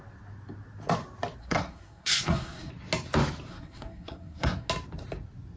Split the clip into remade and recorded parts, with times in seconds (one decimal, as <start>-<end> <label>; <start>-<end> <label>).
0.0-1.4 recorded; 1.4-2.7 remade; 2.7-3.5 recorded; 3.5-4.7 remade; 4.7-5.6 recorded